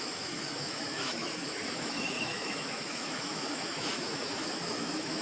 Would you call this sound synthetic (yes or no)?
yes